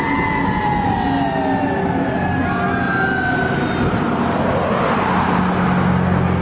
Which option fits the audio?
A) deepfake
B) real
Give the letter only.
B